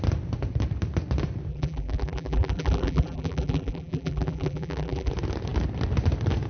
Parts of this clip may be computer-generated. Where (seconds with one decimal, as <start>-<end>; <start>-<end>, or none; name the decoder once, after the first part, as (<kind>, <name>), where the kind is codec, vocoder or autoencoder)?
1.5-5.1 (vocoder, BigVGAN v2)